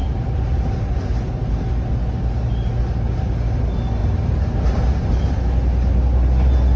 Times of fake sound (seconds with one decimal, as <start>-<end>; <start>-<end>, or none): none